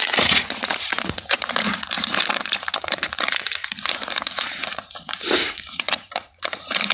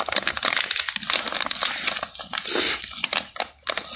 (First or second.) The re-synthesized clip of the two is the first